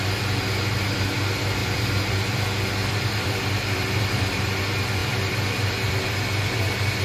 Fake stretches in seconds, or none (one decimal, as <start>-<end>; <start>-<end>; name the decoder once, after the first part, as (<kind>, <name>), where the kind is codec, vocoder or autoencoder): 1.6-4.6 (vocoder, BigVGAN v2); 5.0-7.0